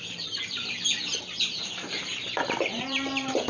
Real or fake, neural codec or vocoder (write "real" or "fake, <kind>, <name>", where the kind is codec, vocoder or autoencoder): fake, vocoder, BigVGAN v2